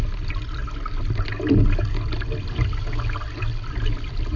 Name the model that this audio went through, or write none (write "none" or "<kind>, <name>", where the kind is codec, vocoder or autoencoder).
none